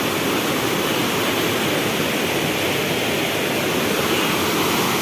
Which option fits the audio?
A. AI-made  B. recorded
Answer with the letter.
B